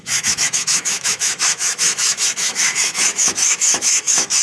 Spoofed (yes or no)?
yes